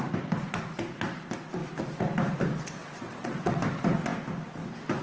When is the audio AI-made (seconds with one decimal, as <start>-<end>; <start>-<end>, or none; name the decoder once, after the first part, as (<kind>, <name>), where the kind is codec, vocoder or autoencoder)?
2.8-3.6 (vocoder, WaveNeXt)